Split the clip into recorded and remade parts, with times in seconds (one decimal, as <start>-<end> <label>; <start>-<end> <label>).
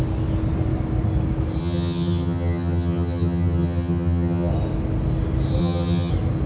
0.0-1.6 recorded; 1.6-4.5 remade; 4.5-5.6 recorded; 5.6-6.1 remade; 6.1-6.5 recorded